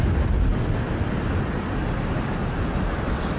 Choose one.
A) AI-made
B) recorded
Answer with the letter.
B